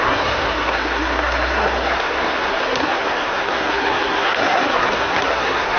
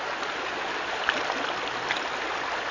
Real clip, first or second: second